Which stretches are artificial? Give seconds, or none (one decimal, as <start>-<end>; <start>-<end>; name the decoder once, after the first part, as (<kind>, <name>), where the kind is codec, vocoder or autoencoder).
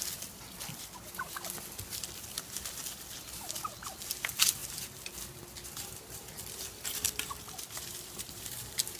0.0-9.0 (vocoder, BigVGAN v2)